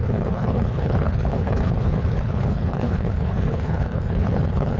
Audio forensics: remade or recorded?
remade